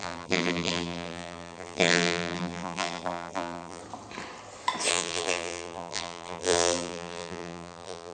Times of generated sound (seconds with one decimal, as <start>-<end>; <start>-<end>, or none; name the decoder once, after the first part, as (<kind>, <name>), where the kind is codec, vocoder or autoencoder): 0.0-3.8 (vocoder, BigVGAN v2); 4.9-8.1